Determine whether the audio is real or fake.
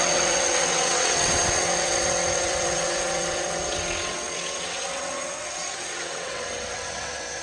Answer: fake